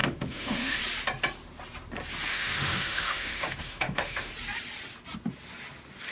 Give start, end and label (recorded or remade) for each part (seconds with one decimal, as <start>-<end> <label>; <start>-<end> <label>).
0.0-0.8 remade; 0.8-2.3 recorded; 2.3-4.3 remade; 4.3-6.1 recorded